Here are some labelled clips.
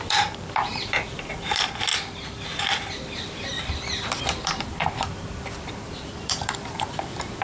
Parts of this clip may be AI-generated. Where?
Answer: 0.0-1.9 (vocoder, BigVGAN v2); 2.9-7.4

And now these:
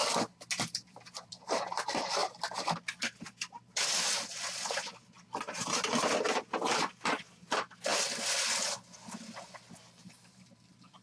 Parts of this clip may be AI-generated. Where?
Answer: 0.7-2.2 (vocoder, BigVGAN v2); 6.6-7.9; 9.7-11.0

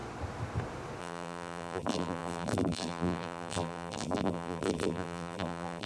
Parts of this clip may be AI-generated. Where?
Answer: 1.0-5.9 (vocoder, BigVGAN v2)

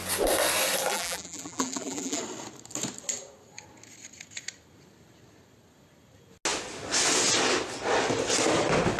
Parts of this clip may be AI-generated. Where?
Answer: 0.9-2.2 (vocoder, BigVGAN v2)

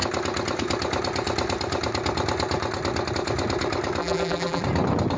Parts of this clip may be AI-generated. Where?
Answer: 4.0-4.6 (vocoder, BigVGAN v2)